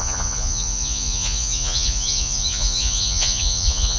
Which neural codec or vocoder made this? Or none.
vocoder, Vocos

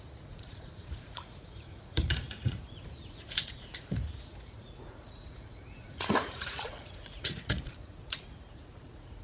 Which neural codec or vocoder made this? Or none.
vocoder, Vocos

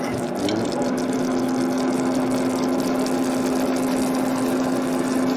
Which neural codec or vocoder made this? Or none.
none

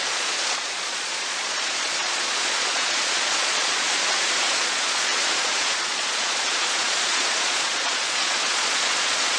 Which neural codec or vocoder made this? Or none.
vocoder, Vocos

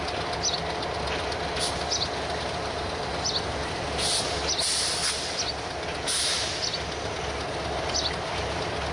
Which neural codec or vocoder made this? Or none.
none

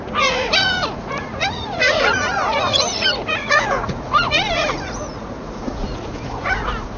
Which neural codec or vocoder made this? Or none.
vocoder, Vocos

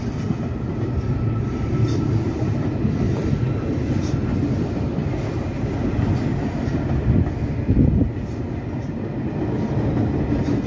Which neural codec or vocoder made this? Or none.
none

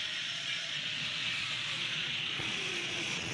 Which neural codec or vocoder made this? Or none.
vocoder, Vocos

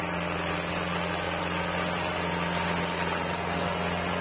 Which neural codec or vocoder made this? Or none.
none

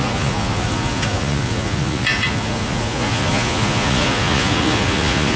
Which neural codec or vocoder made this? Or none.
vocoder, Vocos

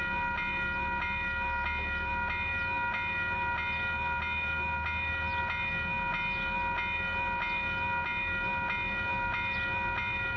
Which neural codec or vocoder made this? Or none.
none